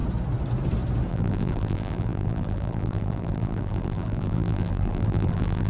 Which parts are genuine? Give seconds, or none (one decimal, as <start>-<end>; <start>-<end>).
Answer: 0.0-1.1